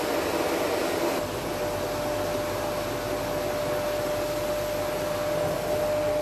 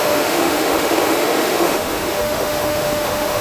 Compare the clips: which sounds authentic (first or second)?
first